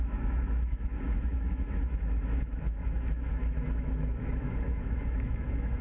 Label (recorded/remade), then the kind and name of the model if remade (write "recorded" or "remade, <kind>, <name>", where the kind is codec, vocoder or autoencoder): remade, autoencoder, DAC-VAE